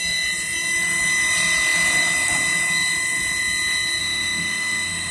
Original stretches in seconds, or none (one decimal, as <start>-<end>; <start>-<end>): 0.0-4.0